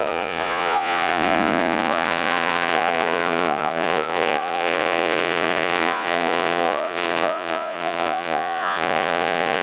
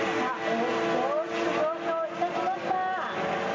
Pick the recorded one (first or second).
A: second